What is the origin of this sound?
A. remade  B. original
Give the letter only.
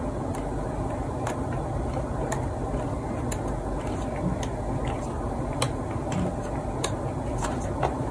B